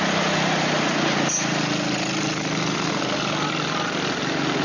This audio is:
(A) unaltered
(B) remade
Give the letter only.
A